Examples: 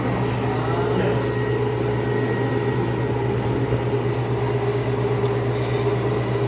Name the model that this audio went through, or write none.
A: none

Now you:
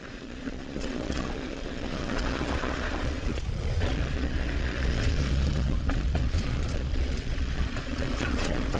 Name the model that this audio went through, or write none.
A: vocoder, Vocos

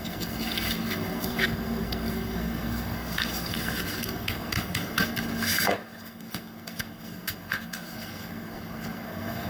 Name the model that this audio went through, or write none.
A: codec, SNAC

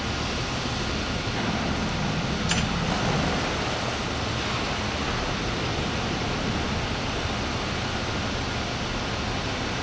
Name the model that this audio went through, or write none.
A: none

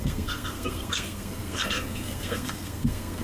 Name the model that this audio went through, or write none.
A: codec, SNAC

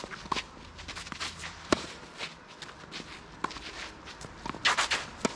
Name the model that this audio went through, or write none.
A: none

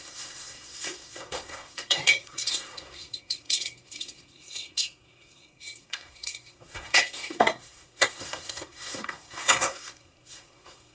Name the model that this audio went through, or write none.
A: codec, SNAC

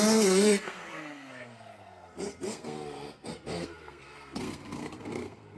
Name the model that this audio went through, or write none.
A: codec, SNAC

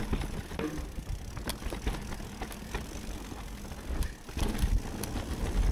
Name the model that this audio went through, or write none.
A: none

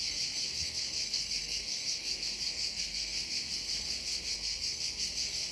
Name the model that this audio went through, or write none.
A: codec, SNAC